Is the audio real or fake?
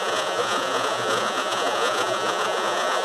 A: fake